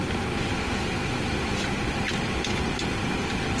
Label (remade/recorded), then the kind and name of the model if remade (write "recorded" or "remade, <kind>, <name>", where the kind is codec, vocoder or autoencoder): recorded